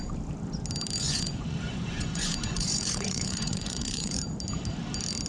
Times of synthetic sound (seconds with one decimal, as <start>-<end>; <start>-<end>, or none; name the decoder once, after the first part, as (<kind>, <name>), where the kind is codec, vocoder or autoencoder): 1.0-4.2 (vocoder, Vocos)

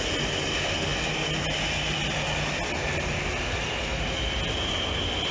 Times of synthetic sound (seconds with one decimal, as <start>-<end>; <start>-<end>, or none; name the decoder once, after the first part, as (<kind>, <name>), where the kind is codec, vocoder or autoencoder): none

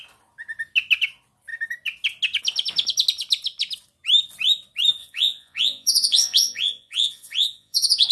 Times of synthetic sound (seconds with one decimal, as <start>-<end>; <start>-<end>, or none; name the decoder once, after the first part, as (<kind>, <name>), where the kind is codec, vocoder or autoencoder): 5.0-8.1 (vocoder, Vocos)

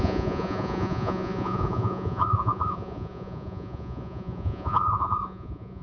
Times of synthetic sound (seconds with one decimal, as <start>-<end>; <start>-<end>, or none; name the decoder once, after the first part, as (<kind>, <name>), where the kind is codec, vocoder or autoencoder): 0.0-5.8 (vocoder, Vocos)

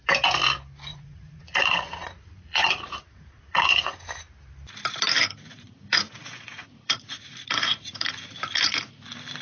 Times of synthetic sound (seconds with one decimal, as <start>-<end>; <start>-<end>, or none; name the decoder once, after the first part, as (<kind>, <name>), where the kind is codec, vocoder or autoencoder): 0.9-4.0 (vocoder, Vocos); 5.5-8.1

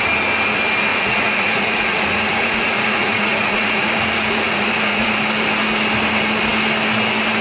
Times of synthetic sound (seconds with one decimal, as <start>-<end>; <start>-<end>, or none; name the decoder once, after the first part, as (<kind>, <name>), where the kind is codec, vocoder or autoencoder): 0.9-5.1 (vocoder, Vocos)